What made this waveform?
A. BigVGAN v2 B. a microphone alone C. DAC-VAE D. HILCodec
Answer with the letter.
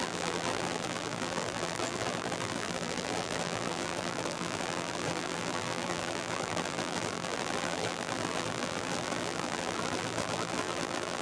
A